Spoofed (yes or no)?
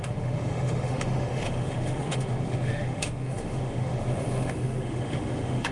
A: yes